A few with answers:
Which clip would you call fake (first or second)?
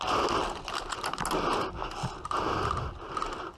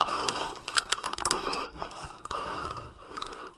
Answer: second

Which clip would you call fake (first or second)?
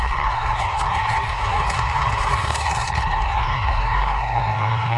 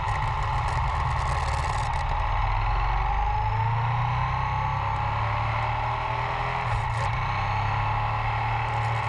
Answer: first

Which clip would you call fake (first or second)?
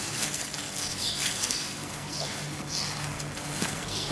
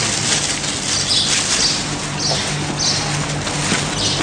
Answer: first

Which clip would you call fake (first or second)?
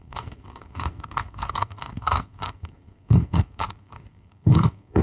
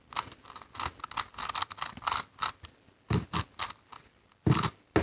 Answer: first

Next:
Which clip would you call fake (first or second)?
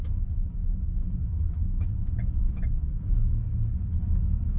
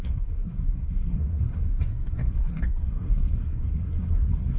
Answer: second